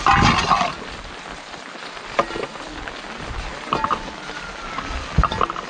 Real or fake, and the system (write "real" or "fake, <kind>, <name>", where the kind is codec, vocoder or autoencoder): real